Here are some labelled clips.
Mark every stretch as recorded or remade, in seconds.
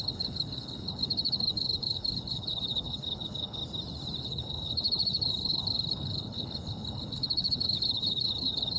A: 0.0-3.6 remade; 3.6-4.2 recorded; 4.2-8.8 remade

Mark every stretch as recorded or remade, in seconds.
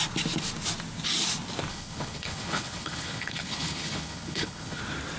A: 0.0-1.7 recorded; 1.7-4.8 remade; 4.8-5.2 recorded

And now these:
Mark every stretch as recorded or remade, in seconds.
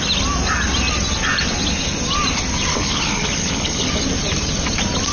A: 0.0-2.7 recorded; 2.7-3.9 remade; 3.9-5.1 recorded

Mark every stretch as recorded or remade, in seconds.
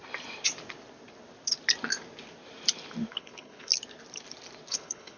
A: 0.0-3.1 recorded; 3.1-3.7 remade; 3.7-4.7 recorded; 4.7-5.2 remade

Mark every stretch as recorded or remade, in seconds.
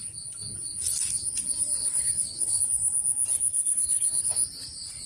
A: 0.0-1.8 recorded; 1.8-2.6 remade; 2.6-3.5 recorded; 3.5-4.3 remade; 4.3-5.1 recorded